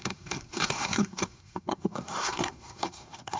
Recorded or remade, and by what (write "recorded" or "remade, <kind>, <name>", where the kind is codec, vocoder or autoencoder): remade, codec, SNAC